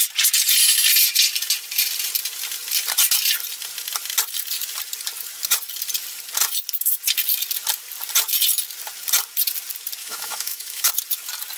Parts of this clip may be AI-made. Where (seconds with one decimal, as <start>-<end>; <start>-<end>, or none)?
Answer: 10.0-10.9